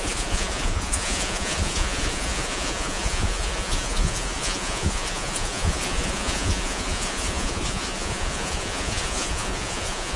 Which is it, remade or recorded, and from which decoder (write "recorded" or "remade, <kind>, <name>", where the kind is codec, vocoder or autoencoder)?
remade, vocoder, Vocos